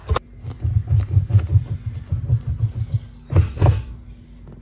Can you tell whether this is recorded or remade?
recorded